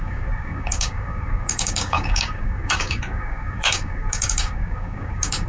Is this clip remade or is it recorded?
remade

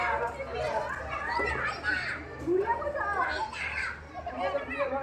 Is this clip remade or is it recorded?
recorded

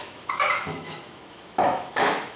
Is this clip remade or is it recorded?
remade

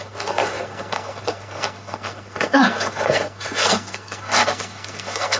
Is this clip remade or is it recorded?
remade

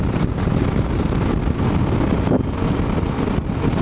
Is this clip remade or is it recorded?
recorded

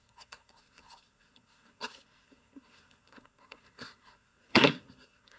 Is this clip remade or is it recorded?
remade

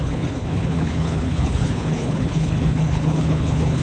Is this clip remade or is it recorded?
remade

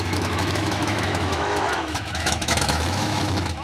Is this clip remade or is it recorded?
remade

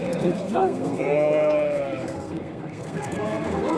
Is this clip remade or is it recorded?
remade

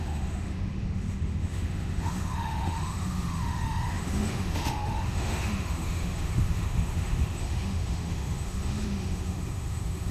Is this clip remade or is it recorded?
remade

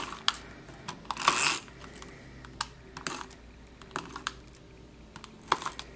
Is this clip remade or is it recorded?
recorded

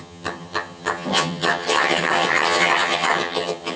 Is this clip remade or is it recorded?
remade